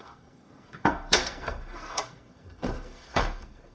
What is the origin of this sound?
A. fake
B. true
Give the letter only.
A